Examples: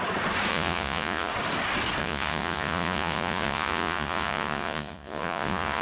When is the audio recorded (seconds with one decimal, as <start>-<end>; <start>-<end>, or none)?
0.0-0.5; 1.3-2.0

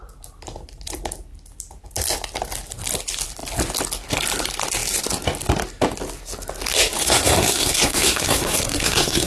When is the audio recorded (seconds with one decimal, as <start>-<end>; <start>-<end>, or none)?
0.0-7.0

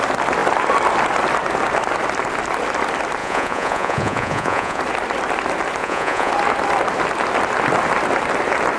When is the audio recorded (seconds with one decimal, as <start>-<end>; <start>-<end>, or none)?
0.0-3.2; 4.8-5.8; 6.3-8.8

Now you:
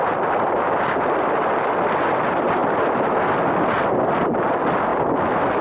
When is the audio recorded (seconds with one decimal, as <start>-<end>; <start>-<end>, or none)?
0.0-5.6

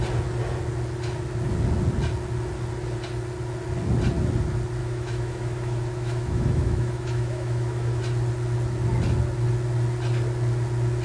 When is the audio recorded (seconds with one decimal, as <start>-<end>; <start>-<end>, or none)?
0.0-4.8; 8.0-11.0